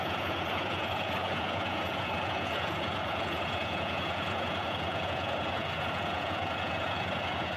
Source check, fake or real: fake